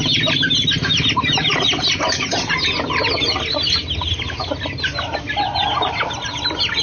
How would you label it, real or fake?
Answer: real